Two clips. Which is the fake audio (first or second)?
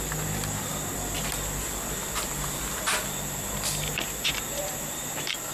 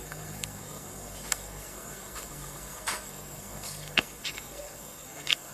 second